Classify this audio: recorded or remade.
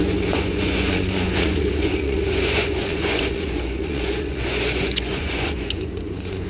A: remade